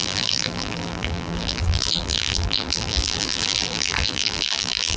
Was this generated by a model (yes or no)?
yes